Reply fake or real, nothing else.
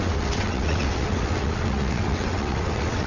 fake